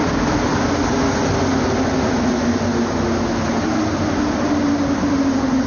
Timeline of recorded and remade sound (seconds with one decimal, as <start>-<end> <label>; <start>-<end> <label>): 0.0-5.7 recorded